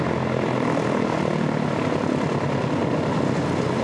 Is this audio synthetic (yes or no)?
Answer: no